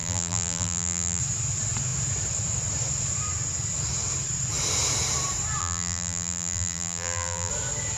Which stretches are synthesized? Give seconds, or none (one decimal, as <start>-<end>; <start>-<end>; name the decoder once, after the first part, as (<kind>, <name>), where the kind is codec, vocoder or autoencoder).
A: 0.0-1.2 (vocoder, BigVGAN v2); 5.6-7.5